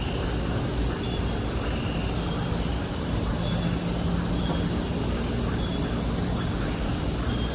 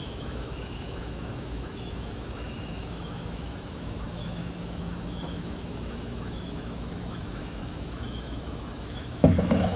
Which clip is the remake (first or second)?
second